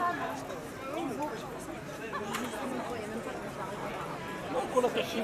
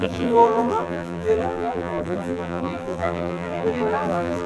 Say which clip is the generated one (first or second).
second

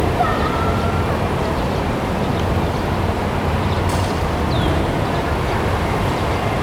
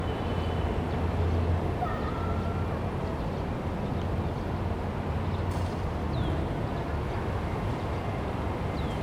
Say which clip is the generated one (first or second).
first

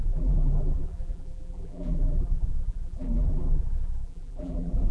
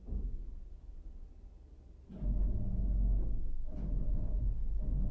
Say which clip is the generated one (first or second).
first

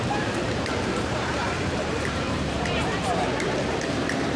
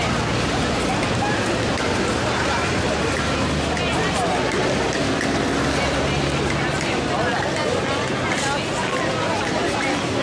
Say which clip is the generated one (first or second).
first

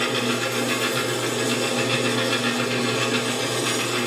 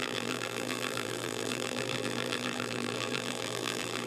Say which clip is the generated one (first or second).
second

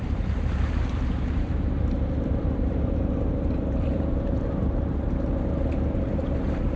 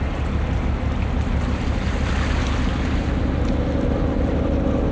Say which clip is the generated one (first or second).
first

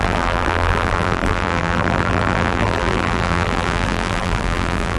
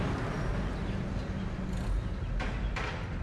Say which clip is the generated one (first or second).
first